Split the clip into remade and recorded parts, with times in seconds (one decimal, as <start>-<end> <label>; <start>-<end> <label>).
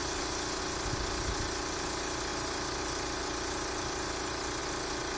0.0-5.2 recorded